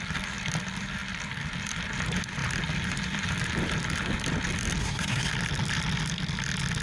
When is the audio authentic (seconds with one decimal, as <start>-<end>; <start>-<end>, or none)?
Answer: 0.0-4.8; 5.3-6.8

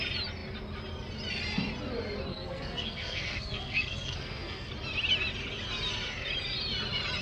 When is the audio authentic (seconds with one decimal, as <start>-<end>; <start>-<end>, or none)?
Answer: 0.0-2.3; 4.7-7.2

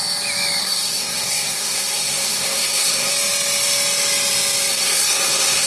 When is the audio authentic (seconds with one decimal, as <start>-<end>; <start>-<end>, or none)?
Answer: 0.0-0.6; 3.1-4.7

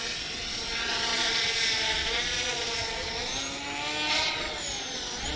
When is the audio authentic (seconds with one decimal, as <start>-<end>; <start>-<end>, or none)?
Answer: 3.3-4.1

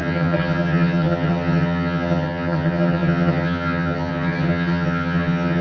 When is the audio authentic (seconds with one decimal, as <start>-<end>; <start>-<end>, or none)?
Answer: none

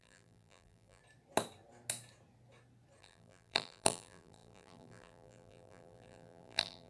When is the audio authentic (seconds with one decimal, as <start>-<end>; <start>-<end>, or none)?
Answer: 1.0-3.0

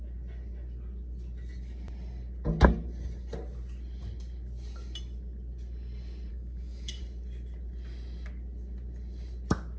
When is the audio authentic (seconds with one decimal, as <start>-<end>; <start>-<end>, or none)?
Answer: 0.0-6.3; 7.0-9.8